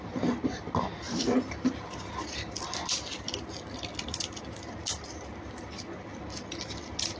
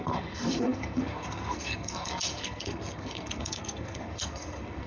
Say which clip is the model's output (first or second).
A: second